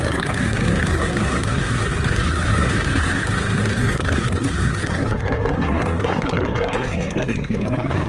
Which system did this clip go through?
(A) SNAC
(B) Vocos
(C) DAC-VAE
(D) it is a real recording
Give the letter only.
A